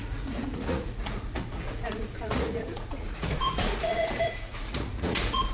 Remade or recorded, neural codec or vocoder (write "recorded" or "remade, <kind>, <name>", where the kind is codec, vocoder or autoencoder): remade, vocoder, Vocos